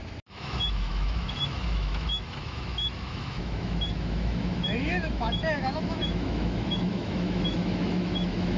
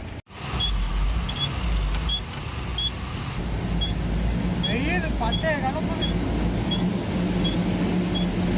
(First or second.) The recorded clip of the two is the second